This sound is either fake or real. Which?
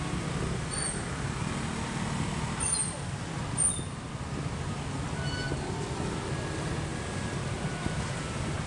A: real